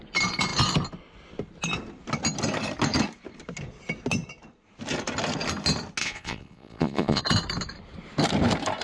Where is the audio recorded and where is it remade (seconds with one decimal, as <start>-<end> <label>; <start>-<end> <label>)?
0.0-6.0 recorded; 6.0-7.2 remade; 7.2-8.8 recorded